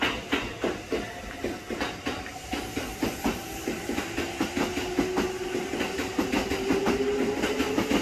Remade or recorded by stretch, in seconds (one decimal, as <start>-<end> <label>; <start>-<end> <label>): 0.0-2.9 recorded; 2.9-4.0 remade; 4.0-8.0 recorded